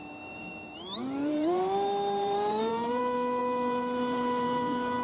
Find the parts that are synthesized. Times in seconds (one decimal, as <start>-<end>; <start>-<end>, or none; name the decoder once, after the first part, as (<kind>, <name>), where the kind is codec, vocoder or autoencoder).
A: 0.0-3.0 (vocoder, BigVGAN v2); 3.4-4.6